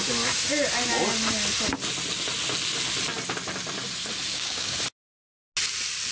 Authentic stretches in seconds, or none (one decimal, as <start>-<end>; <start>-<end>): 0.0-4.3; 4.8-6.1